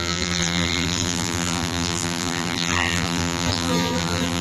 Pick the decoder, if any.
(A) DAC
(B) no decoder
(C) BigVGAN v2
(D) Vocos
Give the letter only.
C